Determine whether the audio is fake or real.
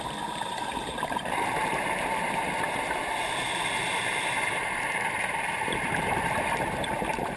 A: fake